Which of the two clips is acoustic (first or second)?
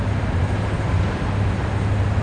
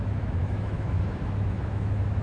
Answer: first